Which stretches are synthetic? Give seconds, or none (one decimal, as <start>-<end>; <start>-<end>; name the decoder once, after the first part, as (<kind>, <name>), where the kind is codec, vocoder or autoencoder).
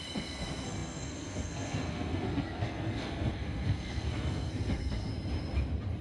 0.0-5.1 (codec, SNAC)